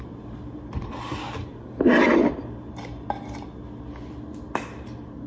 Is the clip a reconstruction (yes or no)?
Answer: no